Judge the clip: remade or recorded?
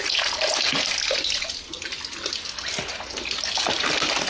recorded